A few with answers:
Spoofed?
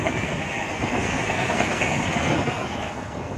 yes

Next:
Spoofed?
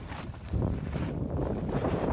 yes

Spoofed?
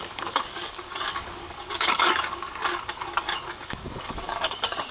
yes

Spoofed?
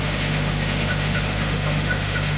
yes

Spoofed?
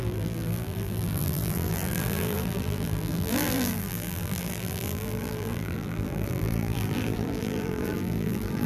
yes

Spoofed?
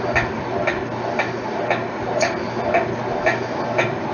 no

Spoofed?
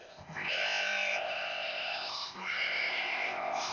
yes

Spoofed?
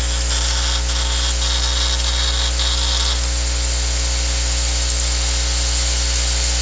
no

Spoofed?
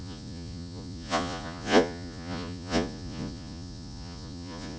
yes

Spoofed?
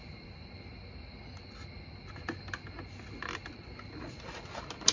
no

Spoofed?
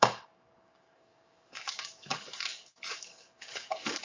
yes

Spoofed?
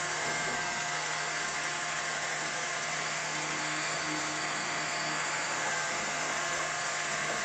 yes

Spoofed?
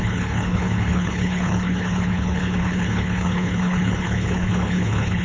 yes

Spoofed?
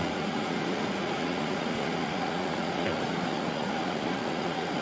yes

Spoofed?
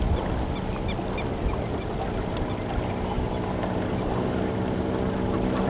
no